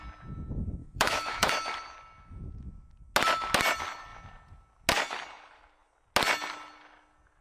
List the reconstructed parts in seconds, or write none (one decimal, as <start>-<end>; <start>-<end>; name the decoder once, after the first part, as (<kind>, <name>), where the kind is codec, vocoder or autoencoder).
0.8-1.5 (autoencoder, DAC-VAE)